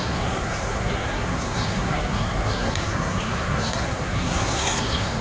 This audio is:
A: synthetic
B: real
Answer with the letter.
A